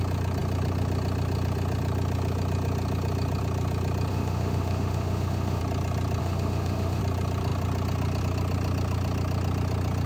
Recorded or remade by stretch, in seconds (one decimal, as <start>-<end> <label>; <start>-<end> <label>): 0.0-4.1 recorded; 4.1-5.6 remade; 5.6-6.2 recorded; 6.2-7.0 remade; 7.0-10.1 recorded